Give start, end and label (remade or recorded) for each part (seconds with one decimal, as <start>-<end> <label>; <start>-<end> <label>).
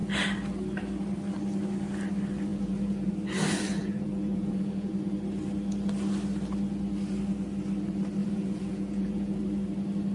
0.0-2.5 recorded; 2.5-3.1 remade; 3.1-3.8 recorded; 3.8-4.9 remade; 4.9-8.2 recorded; 8.2-9.4 remade; 9.4-10.1 recorded